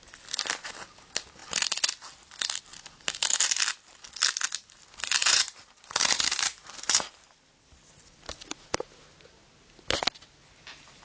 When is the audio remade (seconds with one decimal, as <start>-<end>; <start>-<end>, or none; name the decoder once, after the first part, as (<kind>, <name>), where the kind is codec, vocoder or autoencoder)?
5.2-7.3 (vocoder, BigVGAN v2)